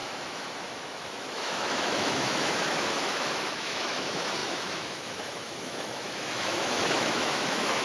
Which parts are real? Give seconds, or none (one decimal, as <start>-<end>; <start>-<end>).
none